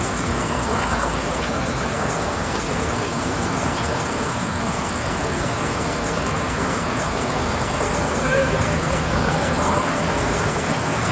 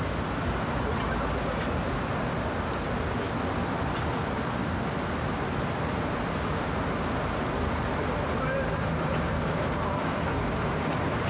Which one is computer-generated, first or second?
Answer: first